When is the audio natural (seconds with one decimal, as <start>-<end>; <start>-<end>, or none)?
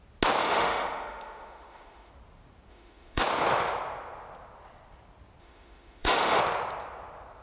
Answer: 0.0-0.4; 2.1-2.7; 3.2-5.4; 6.4-7.4